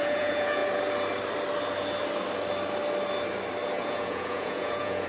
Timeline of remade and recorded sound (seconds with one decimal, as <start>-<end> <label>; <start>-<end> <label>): 0.0-0.6 remade; 0.6-3.7 recorded; 3.7-5.1 remade

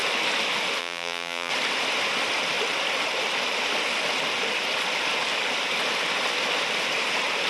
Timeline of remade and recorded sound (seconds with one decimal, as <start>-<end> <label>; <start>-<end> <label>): 0.0-0.8 recorded; 0.8-1.5 remade; 1.5-7.5 recorded

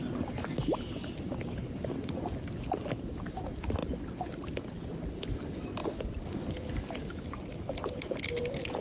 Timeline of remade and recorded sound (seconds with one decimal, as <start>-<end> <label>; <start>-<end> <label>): 0.0-8.8 recorded

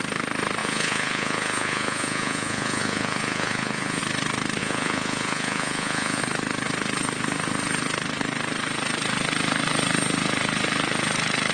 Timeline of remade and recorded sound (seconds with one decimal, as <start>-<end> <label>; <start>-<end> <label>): 0.0-0.6 recorded; 0.6-4.0 remade; 4.0-4.6 recorded; 4.6-6.2 remade; 6.2-11.5 recorded